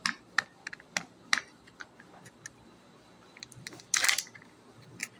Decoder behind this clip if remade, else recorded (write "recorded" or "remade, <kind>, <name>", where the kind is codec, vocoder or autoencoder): remade, vocoder, BigVGAN v2